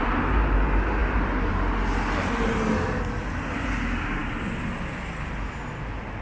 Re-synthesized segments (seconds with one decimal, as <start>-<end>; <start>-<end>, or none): none